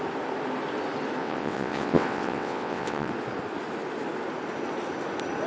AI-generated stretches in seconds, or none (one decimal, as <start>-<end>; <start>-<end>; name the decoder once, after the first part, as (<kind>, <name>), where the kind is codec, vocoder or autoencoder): 1.2-3.1 (vocoder, WaveNeXt)